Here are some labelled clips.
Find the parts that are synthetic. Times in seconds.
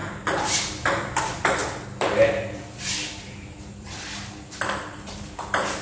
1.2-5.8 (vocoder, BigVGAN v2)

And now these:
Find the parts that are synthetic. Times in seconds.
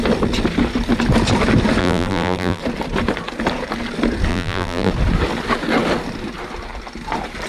1.8-2.6 (vocoder, BigVGAN v2); 4.3-4.9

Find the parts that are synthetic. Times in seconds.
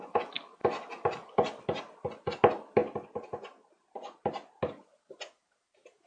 none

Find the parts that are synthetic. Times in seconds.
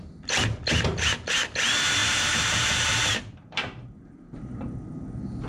2.0-5.1 (vocoder, BigVGAN v2)